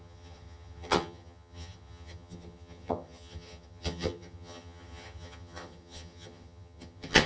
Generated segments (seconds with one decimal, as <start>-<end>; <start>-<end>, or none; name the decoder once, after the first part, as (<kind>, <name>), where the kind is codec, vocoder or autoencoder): 0.0-7.3 (vocoder, HiFi-GAN)

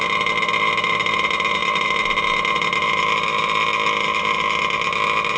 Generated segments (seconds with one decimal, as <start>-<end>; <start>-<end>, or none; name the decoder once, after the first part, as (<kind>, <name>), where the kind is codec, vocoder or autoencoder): none

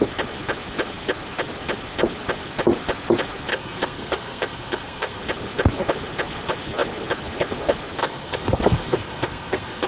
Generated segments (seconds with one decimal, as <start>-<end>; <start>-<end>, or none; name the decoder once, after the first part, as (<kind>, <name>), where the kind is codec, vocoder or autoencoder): 3.5-5.2 (codec, SNAC); 8.0-9.9

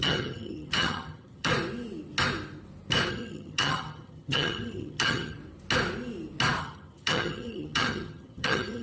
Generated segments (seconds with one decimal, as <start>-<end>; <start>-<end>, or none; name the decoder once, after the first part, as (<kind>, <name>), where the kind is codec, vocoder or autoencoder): 0.0-1.5 (vocoder, HiFi-GAN); 3.1-5.4; 6.6-8.8

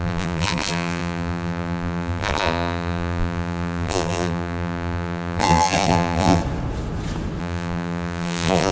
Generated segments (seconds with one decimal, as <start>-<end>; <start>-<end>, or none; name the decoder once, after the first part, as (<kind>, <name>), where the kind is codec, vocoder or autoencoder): 0.0-6.4 (vocoder, BigVGAN v2); 7.4-8.7